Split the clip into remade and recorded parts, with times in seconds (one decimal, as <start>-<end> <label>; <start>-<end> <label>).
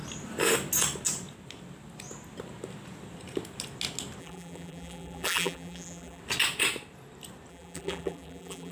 0.0-4.2 recorded; 4.2-6.2 remade; 6.2-7.5 recorded; 7.5-8.7 remade